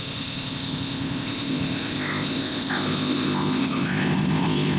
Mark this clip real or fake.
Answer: fake